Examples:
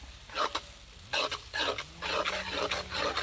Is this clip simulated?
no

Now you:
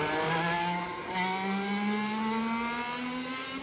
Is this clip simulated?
no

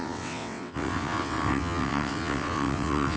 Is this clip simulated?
yes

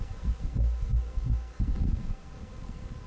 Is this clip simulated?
yes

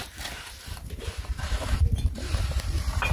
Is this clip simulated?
yes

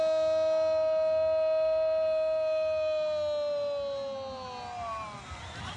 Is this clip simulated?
no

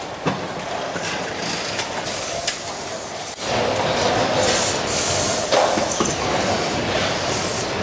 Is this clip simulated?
no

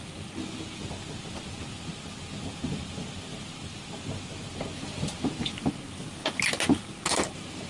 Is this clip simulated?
no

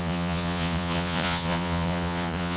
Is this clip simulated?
yes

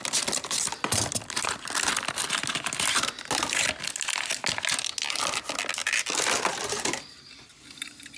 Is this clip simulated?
no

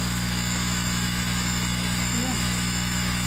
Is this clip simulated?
yes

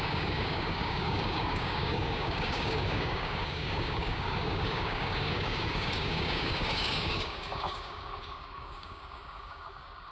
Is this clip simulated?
yes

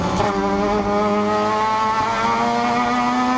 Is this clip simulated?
no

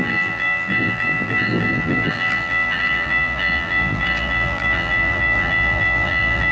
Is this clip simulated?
yes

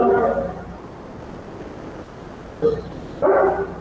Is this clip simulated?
no